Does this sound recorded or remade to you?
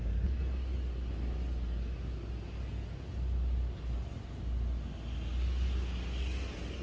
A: recorded